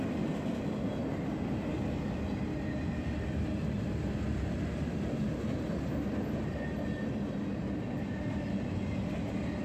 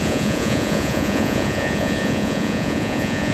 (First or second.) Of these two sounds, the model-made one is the second